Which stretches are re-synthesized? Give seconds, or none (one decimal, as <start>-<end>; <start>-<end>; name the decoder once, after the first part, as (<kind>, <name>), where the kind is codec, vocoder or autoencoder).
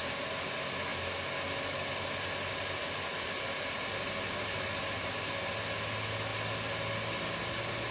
none